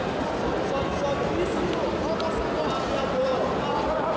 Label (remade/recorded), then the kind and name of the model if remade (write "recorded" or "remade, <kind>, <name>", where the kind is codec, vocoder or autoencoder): recorded